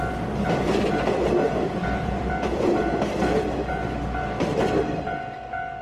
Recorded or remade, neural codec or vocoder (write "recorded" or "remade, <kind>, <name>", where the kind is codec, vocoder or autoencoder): remade, vocoder, BigVGAN v2